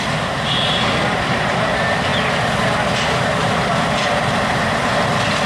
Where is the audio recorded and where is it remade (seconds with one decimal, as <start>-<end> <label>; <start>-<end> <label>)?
0.0-2.1 remade; 2.1-5.5 recorded

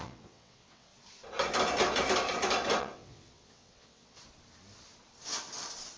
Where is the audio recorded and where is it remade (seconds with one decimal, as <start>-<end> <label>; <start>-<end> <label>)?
0.0-0.9 remade; 0.9-2.8 recorded; 2.8-4.2 remade; 4.2-6.0 recorded